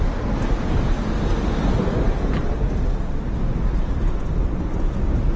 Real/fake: fake